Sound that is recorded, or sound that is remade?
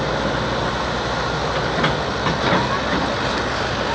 recorded